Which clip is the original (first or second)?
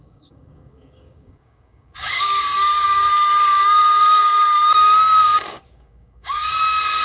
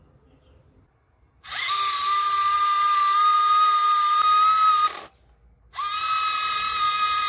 second